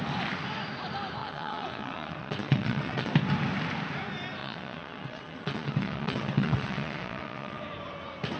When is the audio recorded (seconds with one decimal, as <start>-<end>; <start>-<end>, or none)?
0.0-1.2; 3.1-4.4; 7.6-8.4